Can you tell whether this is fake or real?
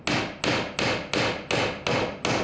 real